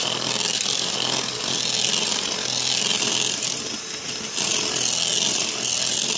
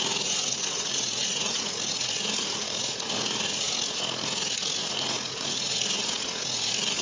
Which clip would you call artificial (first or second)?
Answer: second